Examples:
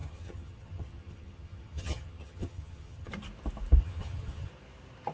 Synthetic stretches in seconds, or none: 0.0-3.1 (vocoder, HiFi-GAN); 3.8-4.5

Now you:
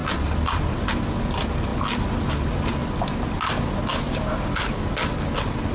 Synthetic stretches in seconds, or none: none

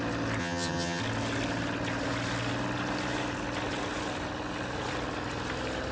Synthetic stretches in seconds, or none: 0.4-1.0 (vocoder, HiFi-GAN)

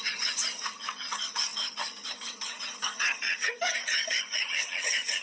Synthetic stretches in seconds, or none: 0.0-5.2 (vocoder, HiFi-GAN)

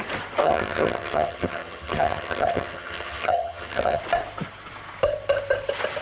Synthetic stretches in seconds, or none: 0.4-4.0 (vocoder, HiFi-GAN)

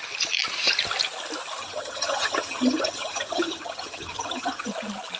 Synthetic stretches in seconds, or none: 1.6-4.7 (vocoder, HiFi-GAN)